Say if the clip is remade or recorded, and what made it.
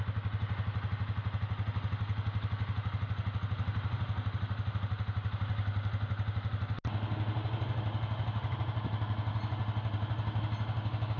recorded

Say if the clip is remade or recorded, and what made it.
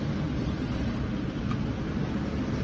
recorded